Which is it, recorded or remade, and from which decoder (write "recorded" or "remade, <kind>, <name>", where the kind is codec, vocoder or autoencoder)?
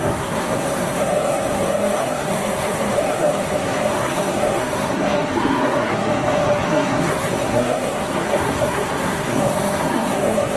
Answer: remade, codec, SNAC